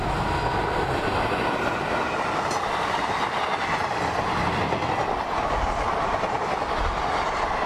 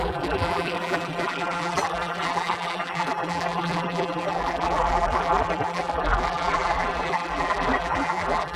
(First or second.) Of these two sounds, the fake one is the second